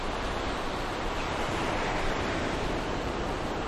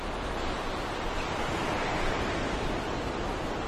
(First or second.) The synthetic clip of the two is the first